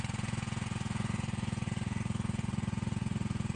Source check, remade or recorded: remade